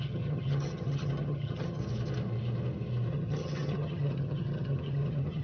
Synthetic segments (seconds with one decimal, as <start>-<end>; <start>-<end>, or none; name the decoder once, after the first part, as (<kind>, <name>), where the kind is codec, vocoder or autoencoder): 0.0-1.8 (vocoder, HiFi-GAN); 3.1-5.4

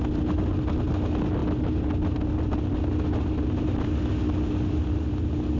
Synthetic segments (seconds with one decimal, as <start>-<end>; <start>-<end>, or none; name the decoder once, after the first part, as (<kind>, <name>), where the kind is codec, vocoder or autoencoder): none

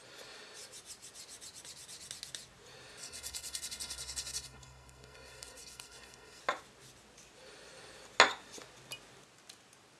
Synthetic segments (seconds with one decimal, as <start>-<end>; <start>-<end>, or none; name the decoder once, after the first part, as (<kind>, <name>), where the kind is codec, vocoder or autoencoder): 3.0-6.4 (codec, SNAC)

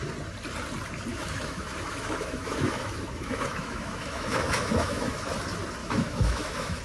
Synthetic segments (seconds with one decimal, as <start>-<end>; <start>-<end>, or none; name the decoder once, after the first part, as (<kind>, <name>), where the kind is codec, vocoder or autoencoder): 1.1-5.2 (autoencoder, DAC-VAE); 5.8-6.8

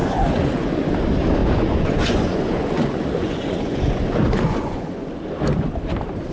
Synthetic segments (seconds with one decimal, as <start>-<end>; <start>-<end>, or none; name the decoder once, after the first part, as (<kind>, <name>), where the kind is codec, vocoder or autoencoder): 0.0-0.9 (vocoder, Vocos); 1.4-5.1

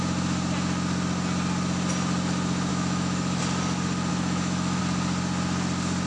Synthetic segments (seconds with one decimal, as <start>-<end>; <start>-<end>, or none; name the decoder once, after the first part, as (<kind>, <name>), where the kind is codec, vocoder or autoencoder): 2.7-3.4 (autoencoder, DAC-VAE); 4.1-4.8

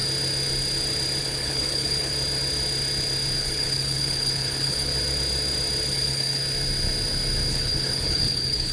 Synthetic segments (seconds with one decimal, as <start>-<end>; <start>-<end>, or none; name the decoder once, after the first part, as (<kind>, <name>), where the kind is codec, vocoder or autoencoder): 1.2-2.1 (codec, HILCodec); 3.4-4.9; 5.9-6.4; 7.5-8.7